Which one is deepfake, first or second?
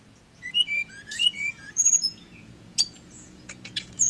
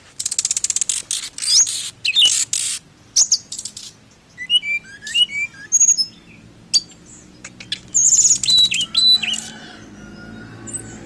first